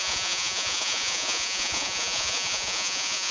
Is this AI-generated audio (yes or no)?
yes